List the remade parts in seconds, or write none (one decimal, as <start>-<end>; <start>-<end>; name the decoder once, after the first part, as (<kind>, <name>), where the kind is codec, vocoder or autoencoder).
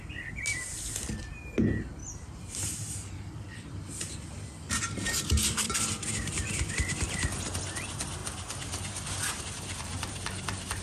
2.0-6.7 (vocoder, BigVGAN v2)